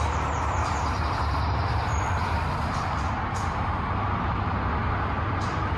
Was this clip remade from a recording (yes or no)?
no